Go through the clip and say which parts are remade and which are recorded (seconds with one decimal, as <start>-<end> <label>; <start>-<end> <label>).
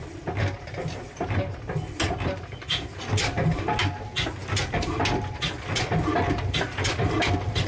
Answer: 0.0-7.7 recorded